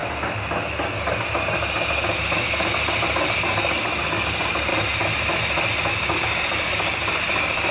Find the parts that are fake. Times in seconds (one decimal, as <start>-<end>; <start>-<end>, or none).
3.4-4.7; 5.9-7.7

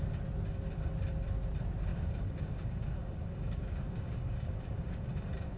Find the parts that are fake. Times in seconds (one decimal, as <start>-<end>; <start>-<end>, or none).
1.9-5.6

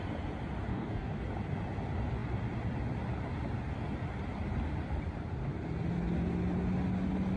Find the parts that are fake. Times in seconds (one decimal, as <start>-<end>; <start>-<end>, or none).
0.7-1.2